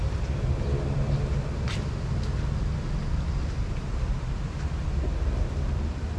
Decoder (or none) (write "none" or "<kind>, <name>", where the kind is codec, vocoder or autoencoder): none